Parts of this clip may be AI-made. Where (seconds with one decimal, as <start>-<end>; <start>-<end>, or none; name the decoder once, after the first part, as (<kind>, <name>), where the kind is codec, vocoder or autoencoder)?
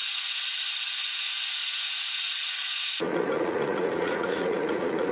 1.6-5.1 (vocoder, Vocos)